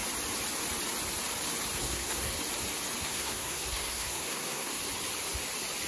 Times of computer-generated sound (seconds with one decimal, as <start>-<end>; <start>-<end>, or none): 1.8-2.4; 3.0-4.8